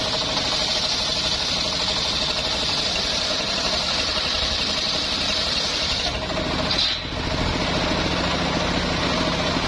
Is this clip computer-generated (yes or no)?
no